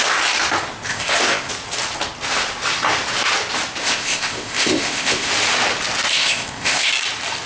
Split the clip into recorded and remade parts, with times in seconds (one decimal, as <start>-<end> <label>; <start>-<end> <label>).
0.0-0.9 recorded; 0.9-1.5 remade; 1.5-3.8 recorded; 3.8-5.3 remade; 5.3-6.1 recorded; 6.1-6.9 remade; 6.9-7.5 recorded